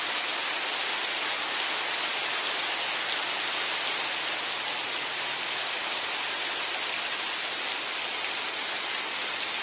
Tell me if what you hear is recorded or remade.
recorded